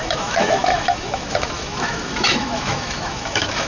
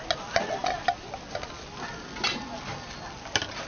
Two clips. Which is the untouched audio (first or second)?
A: second